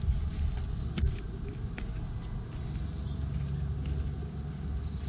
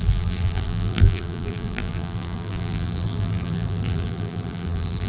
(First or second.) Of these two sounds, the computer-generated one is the second